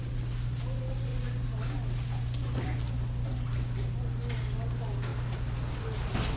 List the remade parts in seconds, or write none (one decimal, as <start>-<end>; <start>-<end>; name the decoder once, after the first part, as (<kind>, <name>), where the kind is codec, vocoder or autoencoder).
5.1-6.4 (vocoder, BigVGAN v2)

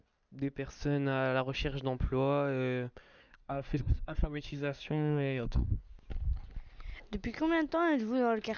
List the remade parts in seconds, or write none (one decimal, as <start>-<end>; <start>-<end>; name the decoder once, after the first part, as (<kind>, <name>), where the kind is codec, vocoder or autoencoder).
3.2-5.7 (codec, SNAC)

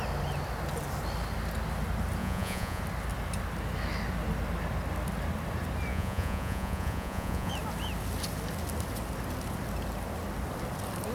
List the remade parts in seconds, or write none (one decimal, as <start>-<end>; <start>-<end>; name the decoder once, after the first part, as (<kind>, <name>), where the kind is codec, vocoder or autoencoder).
2.2-2.8 (vocoder, Vocos); 5.9-7.5